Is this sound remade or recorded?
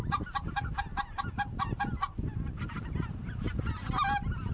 recorded